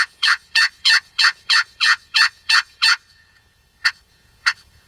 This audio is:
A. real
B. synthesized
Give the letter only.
B